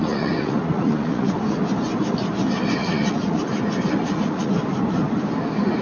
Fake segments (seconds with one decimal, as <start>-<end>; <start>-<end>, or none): 0.0-1.3; 2.8-3.4; 4.0-4.5

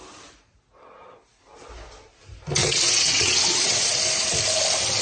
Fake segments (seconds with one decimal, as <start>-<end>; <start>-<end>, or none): 2.6-4.0